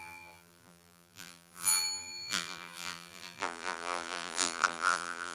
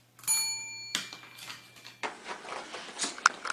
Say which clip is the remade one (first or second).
first